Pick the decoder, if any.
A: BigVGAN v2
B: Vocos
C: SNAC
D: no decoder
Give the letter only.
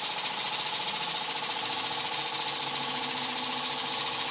D